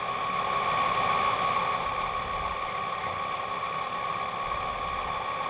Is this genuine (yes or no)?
yes